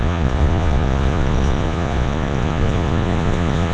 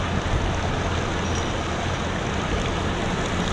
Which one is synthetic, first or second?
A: first